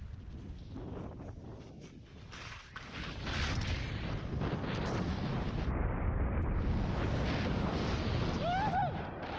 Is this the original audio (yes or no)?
yes